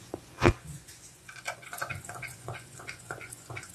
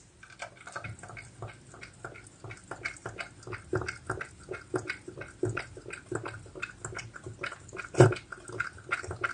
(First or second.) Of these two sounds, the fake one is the first